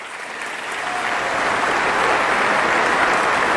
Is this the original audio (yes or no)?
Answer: yes